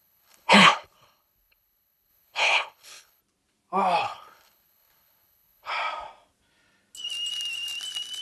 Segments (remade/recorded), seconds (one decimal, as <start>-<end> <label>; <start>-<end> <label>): 0.0-3.2 remade; 3.2-4.0 recorded; 4.0-5.7 remade; 5.7-8.2 recorded